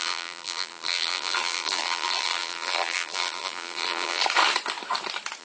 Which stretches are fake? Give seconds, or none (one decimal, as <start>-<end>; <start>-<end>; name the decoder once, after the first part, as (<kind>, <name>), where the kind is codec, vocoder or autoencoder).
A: 0.0-4.2 (vocoder, BigVGAN v2)